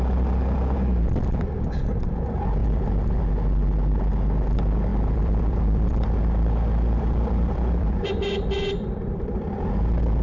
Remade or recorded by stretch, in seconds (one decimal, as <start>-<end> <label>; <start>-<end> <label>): 0.0-2.6 recorded; 2.6-3.2 remade; 3.2-4.9 recorded; 4.9-9.6 remade; 9.6-10.2 recorded